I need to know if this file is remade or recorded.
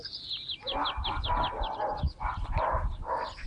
recorded